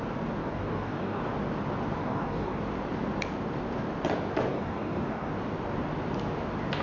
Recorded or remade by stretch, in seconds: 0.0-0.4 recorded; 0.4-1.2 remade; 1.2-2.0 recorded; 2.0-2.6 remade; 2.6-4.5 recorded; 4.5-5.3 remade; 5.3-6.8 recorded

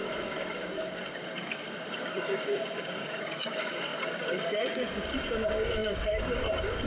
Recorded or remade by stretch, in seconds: 0.0-6.9 remade

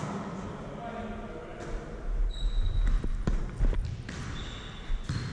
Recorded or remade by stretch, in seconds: 0.0-5.3 recorded

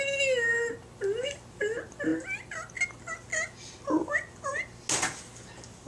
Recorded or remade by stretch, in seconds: 0.0-5.9 recorded

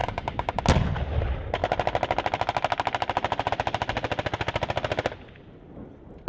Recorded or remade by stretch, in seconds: 0.0-0.6 remade; 0.6-6.3 recorded

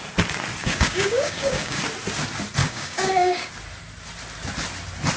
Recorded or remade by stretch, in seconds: 0.0-0.6 recorded; 0.6-1.8 remade; 1.8-2.6 recorded; 2.6-3.5 remade; 3.5-5.2 recorded